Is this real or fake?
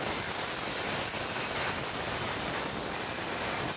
real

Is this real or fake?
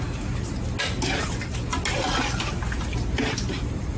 real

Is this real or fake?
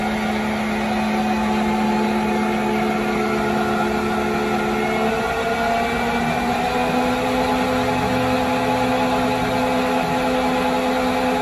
real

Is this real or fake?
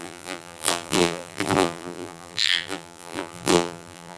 fake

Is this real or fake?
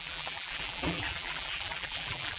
fake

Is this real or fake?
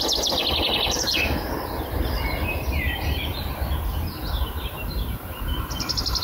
real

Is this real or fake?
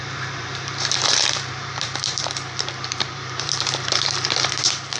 fake